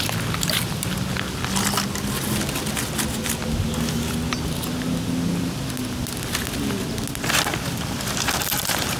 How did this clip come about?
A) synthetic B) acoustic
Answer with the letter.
B